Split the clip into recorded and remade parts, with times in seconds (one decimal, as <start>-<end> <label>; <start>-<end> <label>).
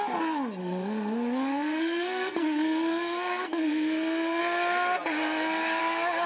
0.0-0.6 recorded; 0.6-4.4 remade; 4.4-6.3 recorded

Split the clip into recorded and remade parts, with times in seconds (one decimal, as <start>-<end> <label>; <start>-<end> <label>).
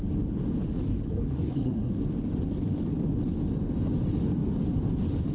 0.0-1.1 recorded; 1.1-1.9 remade; 1.9-5.3 recorded